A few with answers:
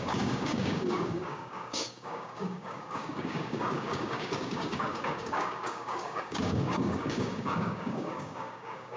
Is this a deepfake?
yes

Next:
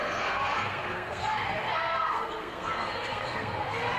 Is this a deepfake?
yes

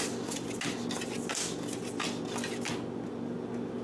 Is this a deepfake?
no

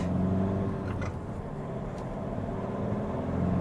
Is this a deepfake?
no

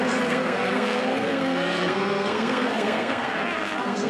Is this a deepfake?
yes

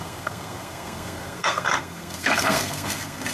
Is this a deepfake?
yes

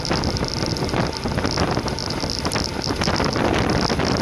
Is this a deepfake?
no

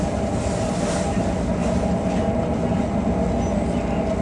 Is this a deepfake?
no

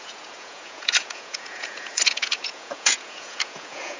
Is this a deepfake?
yes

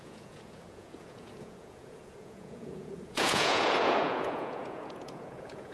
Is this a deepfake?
yes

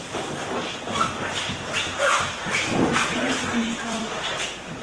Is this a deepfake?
yes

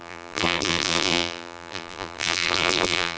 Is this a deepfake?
yes